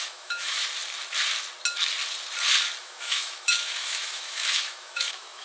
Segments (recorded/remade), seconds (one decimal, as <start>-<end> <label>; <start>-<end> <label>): 0.0-0.6 remade; 0.6-2.8 recorded; 2.8-5.4 remade